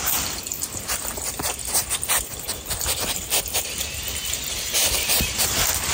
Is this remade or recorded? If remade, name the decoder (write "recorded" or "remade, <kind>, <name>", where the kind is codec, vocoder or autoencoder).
remade, vocoder, BigVGAN v2